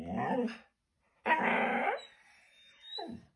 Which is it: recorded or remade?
recorded